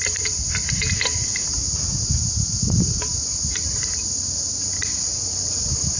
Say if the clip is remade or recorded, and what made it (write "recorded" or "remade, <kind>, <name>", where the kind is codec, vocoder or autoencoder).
remade, vocoder, BigVGAN v2